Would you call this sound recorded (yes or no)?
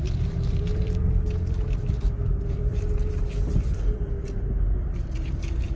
no